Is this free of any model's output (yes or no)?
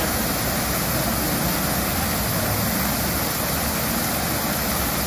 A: yes